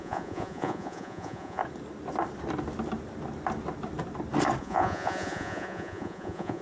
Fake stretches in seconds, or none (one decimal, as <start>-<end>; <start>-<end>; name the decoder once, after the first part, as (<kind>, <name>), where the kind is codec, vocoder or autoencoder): 0.0-1.6 (vocoder, Vocos); 4.6-6.6